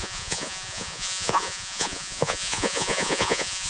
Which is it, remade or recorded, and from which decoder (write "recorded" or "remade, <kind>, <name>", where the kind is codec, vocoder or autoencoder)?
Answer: remade, vocoder, Vocos